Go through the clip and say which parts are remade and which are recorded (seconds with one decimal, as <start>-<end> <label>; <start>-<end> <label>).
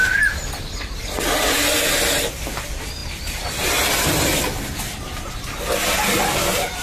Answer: 0.0-6.8 recorded